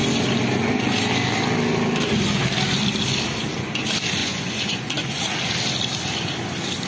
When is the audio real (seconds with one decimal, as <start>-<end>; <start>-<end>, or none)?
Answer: 0.0-4.2; 5.2-6.9

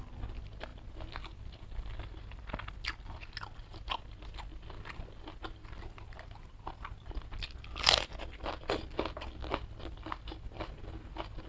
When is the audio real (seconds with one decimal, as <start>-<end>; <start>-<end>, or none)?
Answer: 0.0-11.5

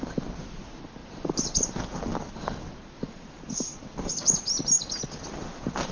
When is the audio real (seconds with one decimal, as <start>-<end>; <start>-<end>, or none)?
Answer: 0.0-3.7; 4.3-5.9

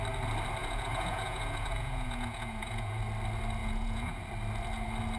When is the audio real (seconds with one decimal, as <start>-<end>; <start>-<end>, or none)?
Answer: 0.0-0.6; 3.0-3.6; 4.2-5.2

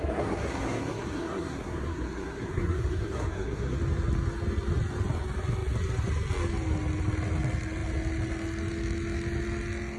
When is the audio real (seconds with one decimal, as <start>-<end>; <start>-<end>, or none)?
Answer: 3.8-10.0

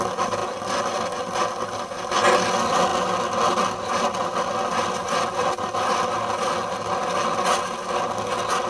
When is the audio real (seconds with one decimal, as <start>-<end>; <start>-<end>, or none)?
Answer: 0.0-8.7